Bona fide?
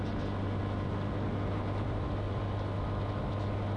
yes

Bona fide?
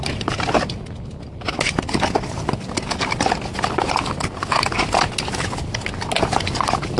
yes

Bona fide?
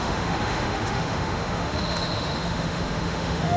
no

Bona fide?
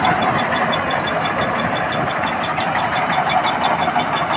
yes